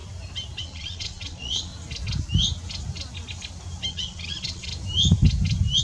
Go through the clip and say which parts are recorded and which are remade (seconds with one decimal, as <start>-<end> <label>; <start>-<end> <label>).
0.0-0.6 recorded; 0.6-1.7 remade; 1.7-3.9 recorded; 3.9-4.7 remade; 4.7-5.8 recorded